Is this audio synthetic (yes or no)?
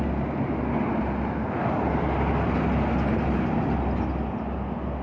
no